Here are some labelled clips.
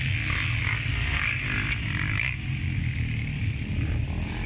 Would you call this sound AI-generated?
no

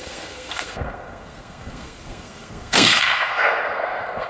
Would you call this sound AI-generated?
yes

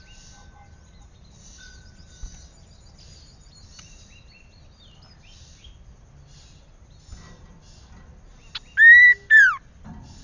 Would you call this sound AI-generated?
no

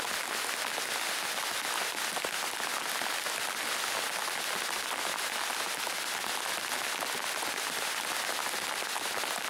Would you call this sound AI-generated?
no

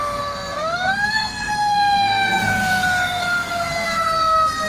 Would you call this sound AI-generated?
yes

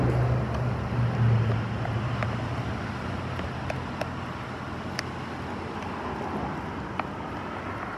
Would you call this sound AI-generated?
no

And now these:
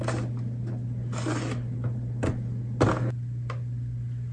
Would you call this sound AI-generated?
no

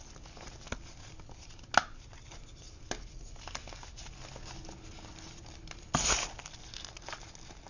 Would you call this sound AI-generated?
no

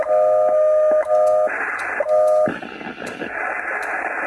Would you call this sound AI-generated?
no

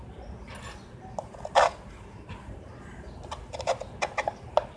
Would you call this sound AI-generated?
no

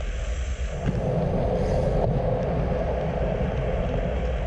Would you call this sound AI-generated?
no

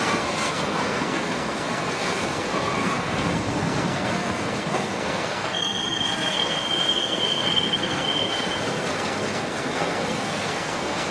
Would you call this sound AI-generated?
yes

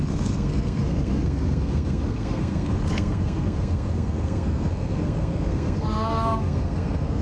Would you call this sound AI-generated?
yes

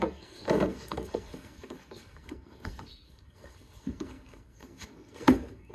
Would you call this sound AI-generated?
yes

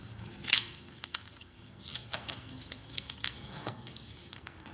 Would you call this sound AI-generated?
yes